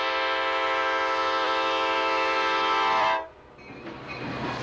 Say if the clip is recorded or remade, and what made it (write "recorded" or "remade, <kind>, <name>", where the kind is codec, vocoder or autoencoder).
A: recorded